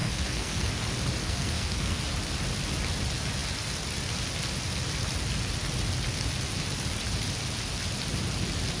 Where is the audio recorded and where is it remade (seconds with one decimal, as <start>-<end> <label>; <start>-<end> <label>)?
0.0-0.7 remade; 0.7-1.2 recorded; 1.2-2.0 remade; 2.0-8.8 recorded